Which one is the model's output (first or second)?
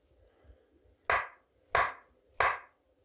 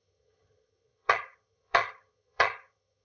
second